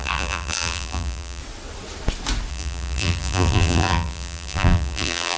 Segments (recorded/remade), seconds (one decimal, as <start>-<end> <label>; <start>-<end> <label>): 0.0-1.4 remade; 1.4-2.5 recorded; 2.5-5.4 remade